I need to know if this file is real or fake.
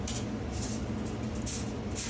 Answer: real